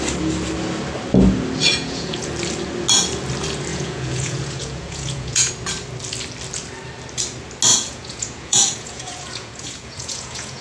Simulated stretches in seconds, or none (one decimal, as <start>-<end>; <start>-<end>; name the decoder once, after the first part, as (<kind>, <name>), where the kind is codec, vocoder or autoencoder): 1.7-2.3 (vocoder, Vocos); 3.7-5.5; 7.7-10.6